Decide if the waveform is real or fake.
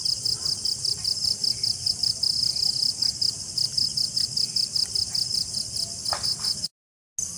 real